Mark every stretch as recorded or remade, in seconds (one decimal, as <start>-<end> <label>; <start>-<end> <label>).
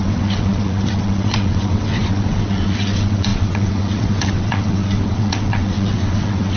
0.0-6.6 remade